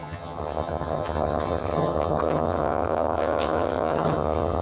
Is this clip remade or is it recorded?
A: remade